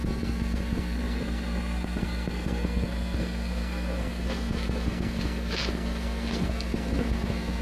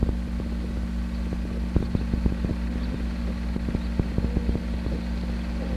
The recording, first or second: second